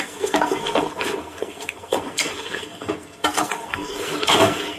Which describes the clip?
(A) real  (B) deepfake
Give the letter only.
B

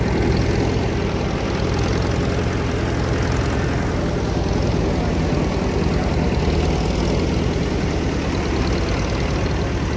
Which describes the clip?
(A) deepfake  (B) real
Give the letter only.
B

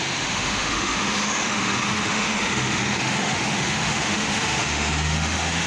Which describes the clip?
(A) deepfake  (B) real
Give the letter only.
A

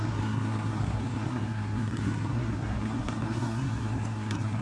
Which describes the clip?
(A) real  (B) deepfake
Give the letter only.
B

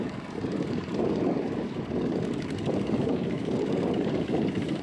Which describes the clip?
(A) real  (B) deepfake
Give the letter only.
B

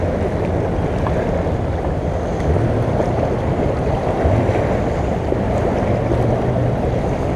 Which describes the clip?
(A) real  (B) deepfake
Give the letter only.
A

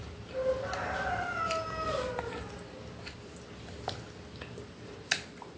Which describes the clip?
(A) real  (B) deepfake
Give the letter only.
A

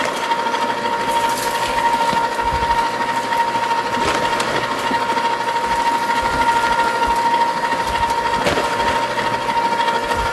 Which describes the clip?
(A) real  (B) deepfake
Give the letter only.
A